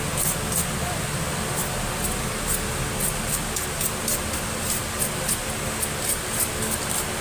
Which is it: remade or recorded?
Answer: recorded